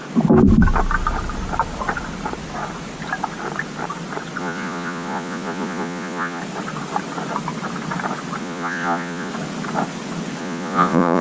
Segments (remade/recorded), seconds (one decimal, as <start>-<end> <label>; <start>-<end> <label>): 0.0-4.4 recorded; 4.4-6.4 remade; 6.4-8.4 recorded; 8.4-9.3 remade; 9.3-10.4 recorded; 10.4-11.2 remade